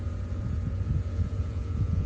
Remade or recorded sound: remade